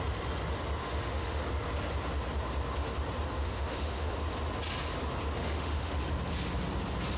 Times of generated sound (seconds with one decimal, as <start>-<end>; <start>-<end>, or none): 0.8-1.4; 3.4-4.1; 5.4-6.0

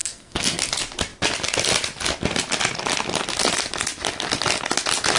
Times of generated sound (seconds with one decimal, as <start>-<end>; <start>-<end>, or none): 0.0-0.6

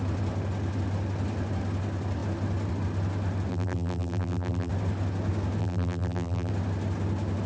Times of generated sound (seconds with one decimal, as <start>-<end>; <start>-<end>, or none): 3.5-4.7; 5.6-6.5

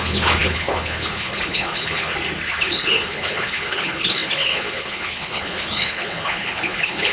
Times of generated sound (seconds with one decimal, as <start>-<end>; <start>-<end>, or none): 0.0-2.1; 2.6-7.1

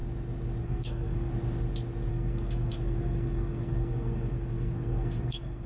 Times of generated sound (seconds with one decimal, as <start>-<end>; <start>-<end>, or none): 0.6-1.3; 2.1-5.7

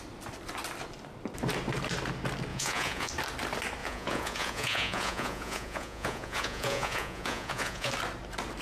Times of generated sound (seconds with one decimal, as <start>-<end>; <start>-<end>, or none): 2.5-3.1; 3.8-7.9

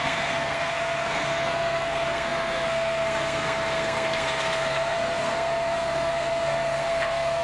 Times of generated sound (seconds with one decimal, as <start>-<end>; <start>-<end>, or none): 0.0-7.4

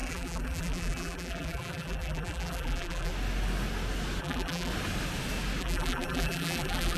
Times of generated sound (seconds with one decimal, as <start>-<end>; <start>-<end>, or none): 0.0-3.1; 4.2-4.7; 5.6-7.0